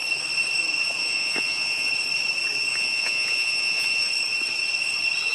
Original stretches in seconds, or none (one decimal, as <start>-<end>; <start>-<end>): 0.0-1.0; 1.9-2.7; 4.1-5.3